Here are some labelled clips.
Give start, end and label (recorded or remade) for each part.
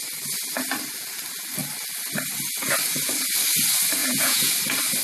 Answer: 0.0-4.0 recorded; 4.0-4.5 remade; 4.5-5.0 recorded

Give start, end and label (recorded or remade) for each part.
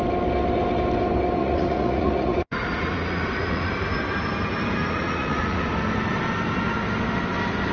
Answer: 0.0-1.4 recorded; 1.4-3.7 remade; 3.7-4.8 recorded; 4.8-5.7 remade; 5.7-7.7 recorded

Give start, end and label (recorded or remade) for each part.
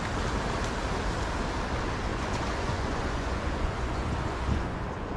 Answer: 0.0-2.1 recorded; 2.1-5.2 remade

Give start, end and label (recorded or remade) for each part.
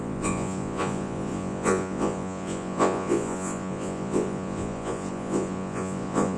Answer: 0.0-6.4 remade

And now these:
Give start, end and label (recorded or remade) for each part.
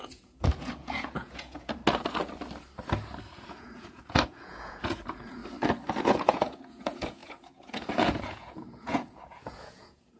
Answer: 0.0-1.8 remade; 1.8-3.6 recorded; 3.6-5.4 remade; 5.4-6.0 recorded; 6.0-10.2 remade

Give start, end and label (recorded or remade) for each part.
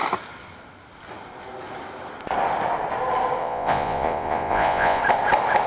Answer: 0.0-3.4 recorded; 3.4-5.0 remade; 5.0-5.7 recorded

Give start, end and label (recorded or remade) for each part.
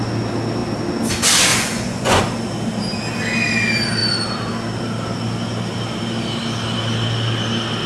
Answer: 0.0-1.5 recorded; 1.5-2.2 remade; 2.2-7.9 recorded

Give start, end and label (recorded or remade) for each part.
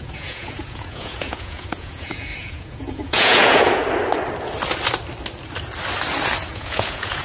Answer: 0.0-3.8 remade; 3.8-6.5 recorded; 6.5-7.2 remade